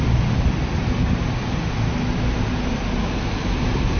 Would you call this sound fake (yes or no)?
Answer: no